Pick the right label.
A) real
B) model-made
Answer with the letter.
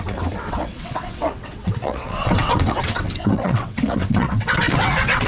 B